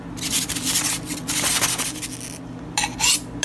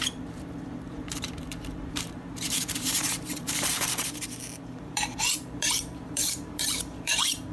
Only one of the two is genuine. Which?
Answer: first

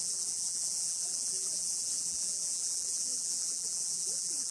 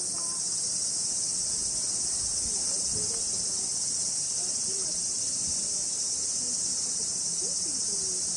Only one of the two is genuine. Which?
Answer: second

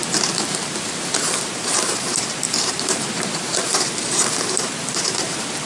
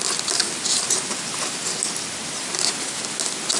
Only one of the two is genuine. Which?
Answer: second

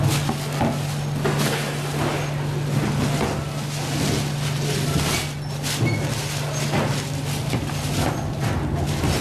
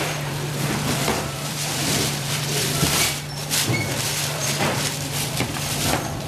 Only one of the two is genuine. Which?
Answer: first